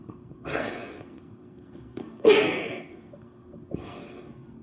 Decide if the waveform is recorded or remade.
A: remade